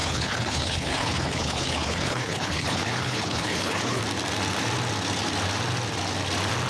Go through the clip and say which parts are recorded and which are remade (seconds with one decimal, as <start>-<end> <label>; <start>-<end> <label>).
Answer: 0.0-4.0 remade; 4.0-6.7 recorded